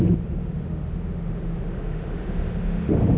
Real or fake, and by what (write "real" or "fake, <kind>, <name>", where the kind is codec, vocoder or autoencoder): fake, autoencoder, DAC-VAE